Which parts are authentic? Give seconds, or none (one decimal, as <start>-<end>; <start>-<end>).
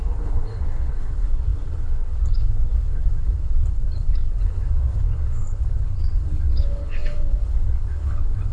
none